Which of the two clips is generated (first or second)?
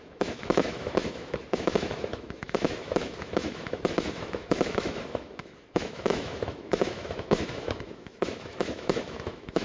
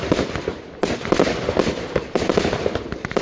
first